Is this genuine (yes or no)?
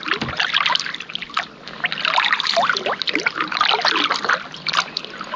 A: yes